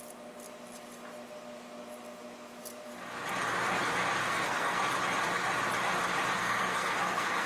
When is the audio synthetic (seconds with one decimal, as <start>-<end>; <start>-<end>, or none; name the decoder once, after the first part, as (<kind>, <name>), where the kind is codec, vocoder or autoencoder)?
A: 4.2-4.8 (codec, SNAC); 6.4-7.5